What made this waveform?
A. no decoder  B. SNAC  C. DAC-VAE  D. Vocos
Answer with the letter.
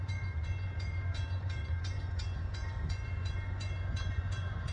D